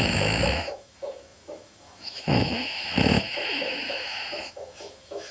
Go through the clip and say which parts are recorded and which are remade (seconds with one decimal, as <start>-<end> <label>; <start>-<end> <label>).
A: 0.0-5.3 remade